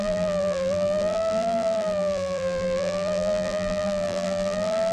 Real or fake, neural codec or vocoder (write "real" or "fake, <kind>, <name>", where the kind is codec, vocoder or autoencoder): fake, vocoder, BigVGAN v2